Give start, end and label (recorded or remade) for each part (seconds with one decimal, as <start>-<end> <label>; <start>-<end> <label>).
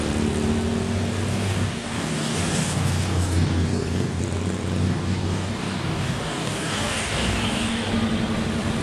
0.0-1.3 recorded; 1.3-4.2 remade; 4.2-4.8 recorded; 4.8-7.9 remade; 7.9-8.8 recorded